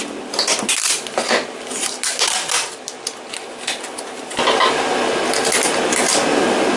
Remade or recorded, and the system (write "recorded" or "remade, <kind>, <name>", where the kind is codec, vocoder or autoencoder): recorded